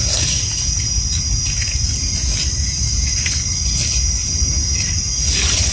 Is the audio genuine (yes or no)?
yes